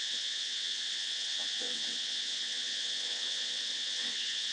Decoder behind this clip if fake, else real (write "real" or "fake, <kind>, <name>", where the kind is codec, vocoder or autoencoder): fake, vocoder, WaveNeXt